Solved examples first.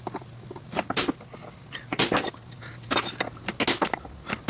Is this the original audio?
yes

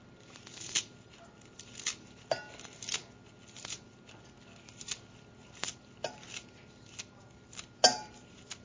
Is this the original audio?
yes